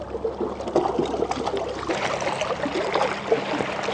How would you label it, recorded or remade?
recorded